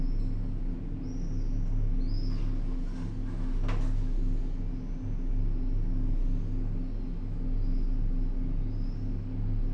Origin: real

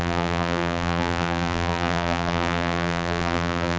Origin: fake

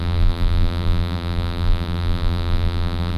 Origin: fake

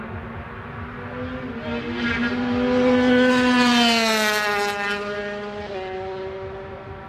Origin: real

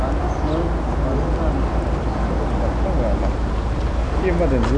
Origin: real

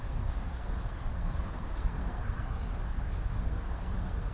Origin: fake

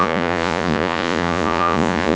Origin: fake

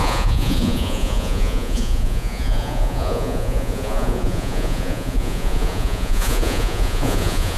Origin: fake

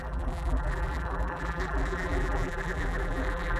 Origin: fake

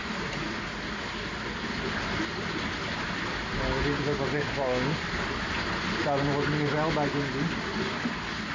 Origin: real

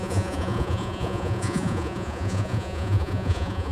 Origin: fake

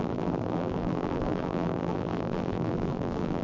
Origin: fake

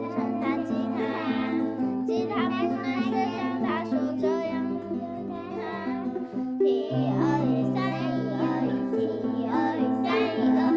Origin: real